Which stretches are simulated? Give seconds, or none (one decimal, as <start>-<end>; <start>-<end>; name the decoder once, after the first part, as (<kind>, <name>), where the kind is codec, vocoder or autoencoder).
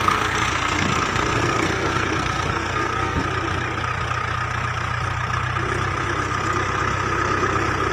0.0-3.2 (codec, SNAC)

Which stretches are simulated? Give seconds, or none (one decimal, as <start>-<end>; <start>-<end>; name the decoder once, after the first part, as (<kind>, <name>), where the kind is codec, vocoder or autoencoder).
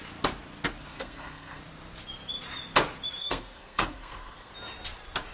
0.9-1.6 (codec, SNAC); 3.2-4.5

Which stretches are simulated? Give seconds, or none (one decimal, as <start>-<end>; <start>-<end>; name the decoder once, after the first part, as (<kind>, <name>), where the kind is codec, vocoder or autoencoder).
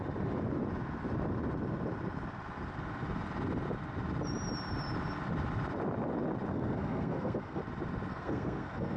6.5-7.6 (codec, SNAC); 8.1-9.0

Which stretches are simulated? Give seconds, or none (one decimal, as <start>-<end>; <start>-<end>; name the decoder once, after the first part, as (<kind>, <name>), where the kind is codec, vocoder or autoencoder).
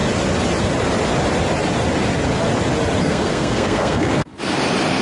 3.0-4.3 (codec, SNAC)